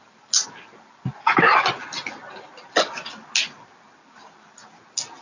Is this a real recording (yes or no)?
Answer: yes